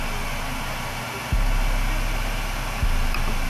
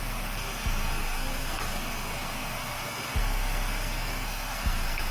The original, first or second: first